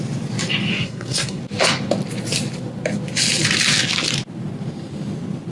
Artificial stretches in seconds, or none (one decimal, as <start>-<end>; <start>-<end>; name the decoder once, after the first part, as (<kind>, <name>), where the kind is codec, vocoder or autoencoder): 0.7-1.4 (codec, SNAC)